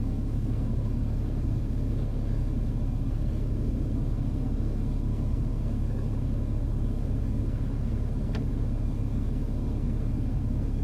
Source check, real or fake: fake